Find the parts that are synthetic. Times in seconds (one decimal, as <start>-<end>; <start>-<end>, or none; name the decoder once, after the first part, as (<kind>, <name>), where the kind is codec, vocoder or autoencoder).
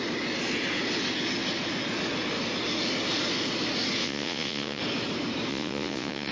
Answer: 4.0-4.8 (vocoder, Vocos); 5.5-6.3